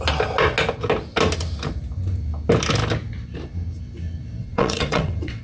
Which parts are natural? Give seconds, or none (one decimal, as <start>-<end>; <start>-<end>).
0.0-4.4

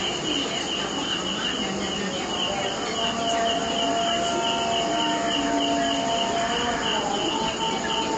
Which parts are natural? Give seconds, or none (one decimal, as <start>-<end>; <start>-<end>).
0.0-6.9

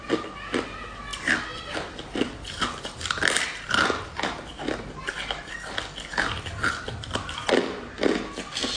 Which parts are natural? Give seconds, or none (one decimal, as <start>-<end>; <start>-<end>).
0.0-8.8

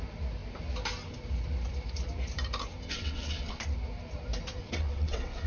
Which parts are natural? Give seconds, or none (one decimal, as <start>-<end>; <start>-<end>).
0.0-2.9; 3.5-4.6

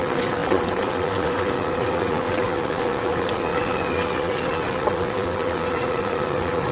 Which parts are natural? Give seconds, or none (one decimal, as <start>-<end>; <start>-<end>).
none

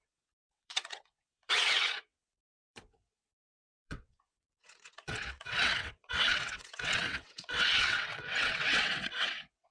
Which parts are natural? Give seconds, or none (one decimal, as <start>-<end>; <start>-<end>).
none

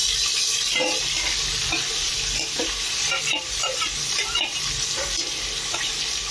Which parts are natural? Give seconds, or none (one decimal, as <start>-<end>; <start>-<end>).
0.0-6.3

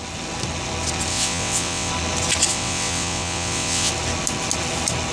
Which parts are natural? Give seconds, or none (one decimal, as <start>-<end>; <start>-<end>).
0.0-1.1; 1.9-2.5; 3.9-5.1